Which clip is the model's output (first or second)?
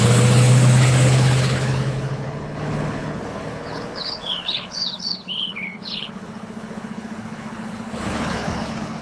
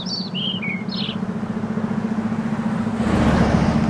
first